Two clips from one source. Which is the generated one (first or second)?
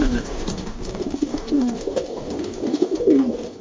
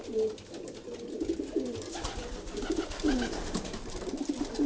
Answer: first